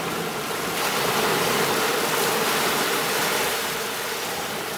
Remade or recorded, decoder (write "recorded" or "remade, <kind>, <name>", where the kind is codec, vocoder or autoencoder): recorded